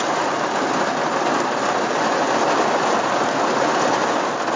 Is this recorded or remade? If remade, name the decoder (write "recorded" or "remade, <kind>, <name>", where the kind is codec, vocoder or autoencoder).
recorded